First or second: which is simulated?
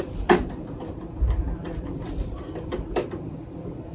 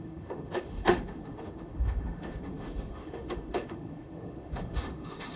second